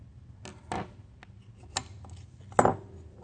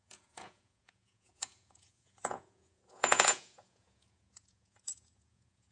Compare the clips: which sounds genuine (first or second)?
first